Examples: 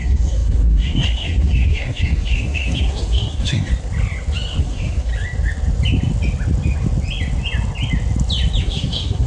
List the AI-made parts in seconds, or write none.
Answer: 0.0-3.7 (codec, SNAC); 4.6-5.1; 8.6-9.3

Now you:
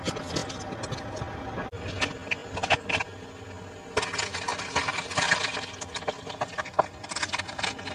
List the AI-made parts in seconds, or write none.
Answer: none

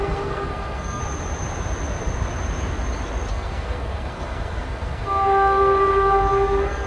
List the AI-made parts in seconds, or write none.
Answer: 0.0-1.0 (codec, SNAC); 3.3-6.9

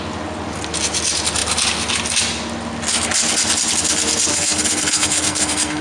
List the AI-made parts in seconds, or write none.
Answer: 4.3-5.8 (codec, SNAC)

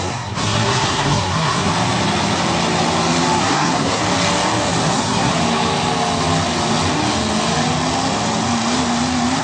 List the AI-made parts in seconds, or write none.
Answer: 0.0-1.7 (codec, SNAC); 3.4-4.0; 4.8-5.3

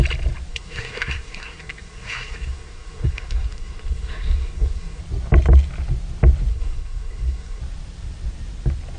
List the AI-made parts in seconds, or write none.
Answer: 0.5-5.0 (codec, SNAC); 6.5-7.6

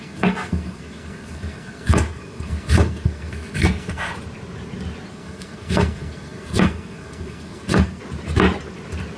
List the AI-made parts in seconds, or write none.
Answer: 0.0-4.1 (codec, SNAC); 5.1-8.0